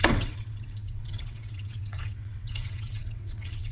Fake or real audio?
fake